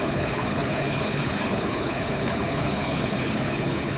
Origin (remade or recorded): remade